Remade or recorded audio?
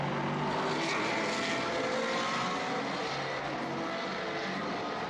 recorded